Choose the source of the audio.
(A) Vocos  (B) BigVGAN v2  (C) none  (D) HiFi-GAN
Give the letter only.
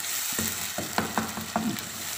C